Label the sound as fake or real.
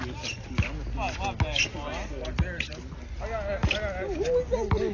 real